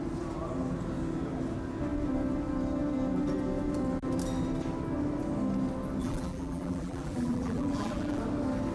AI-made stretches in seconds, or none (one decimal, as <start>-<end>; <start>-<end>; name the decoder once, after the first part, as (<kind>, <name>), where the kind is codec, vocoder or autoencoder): 6.0-8.2 (vocoder, BigVGAN v2)

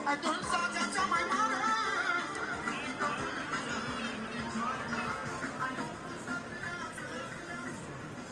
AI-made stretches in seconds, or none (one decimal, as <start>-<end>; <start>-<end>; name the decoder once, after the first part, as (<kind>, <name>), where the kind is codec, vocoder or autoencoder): none

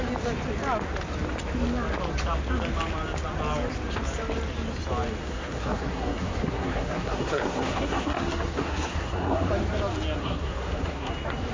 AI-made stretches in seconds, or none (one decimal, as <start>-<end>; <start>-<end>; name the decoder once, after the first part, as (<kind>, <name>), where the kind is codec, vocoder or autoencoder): 5.2-9.5 (codec, SNAC); 10.2-11.1

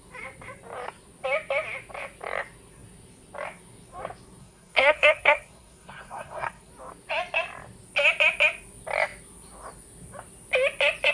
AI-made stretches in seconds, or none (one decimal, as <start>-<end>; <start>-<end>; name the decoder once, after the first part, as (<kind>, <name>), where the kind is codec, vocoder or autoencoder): 4.4-6.7 (codec, SNAC)

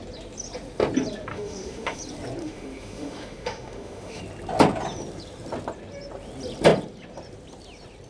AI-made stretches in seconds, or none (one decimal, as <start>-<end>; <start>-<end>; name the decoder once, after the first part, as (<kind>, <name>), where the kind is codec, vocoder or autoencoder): 1.3-2.0 (autoencoder, DAC-VAE); 2.4-4.2

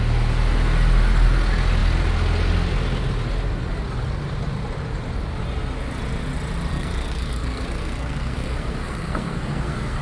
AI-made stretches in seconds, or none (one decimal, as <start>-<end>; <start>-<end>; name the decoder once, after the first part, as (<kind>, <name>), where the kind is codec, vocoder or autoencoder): 6.7-10.0 (codec, SNAC)

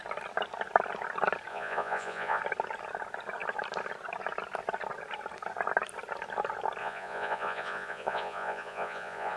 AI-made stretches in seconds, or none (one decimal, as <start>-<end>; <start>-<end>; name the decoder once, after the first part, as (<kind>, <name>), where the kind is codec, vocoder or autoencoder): 1.5-2.4 (vocoder, Vocos); 6.8-9.4

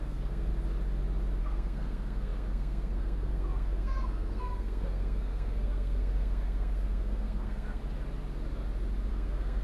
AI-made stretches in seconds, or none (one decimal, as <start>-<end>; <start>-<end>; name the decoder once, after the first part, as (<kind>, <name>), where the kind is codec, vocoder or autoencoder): 0.0-0.5 (codec, SNAC); 1.4-7.8; 9.1-9.6